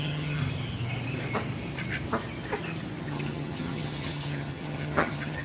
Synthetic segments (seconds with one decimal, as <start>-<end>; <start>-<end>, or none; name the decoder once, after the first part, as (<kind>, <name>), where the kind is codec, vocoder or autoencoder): 0.0-0.4 (vocoder, HiFi-GAN); 3.0-5.4